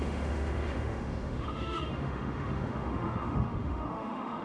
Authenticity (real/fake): fake